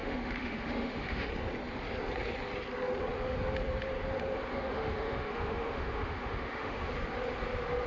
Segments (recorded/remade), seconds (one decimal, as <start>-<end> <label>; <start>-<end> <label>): 0.0-1.3 remade; 1.3-4.5 recorded; 4.5-6.9 remade; 6.9-7.9 recorded